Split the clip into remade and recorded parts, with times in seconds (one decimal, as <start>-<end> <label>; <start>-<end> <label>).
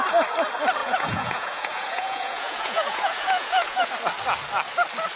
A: 0.0-0.8 recorded; 0.8-3.9 remade; 3.9-5.2 recorded